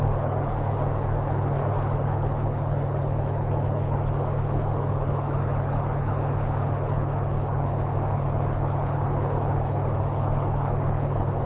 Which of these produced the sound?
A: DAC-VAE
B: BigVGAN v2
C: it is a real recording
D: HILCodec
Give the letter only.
D